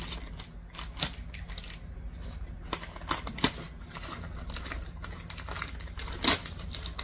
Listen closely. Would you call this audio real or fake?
real